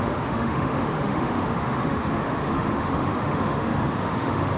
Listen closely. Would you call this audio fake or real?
fake